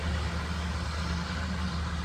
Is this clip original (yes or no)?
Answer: yes